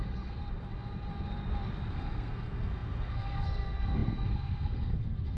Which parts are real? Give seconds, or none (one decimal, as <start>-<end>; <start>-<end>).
0.4-1.9